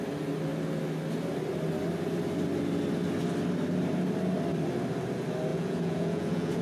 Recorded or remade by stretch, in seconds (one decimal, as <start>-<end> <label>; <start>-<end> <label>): 0.0-5.5 recorded; 5.5-6.6 remade